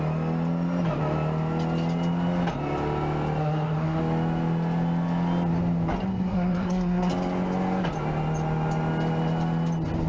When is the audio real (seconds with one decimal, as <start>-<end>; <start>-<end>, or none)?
0.0-3.4; 4.0-6.1; 7.1-10.1